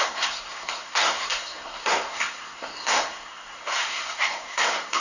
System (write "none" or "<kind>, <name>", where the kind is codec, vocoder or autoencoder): codec, SNAC